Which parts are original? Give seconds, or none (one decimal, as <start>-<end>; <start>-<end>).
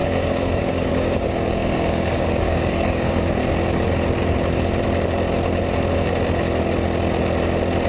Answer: 3.4-7.9